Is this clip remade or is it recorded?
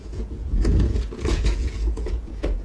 remade